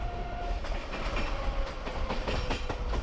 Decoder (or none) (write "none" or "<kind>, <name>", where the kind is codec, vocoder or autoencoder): none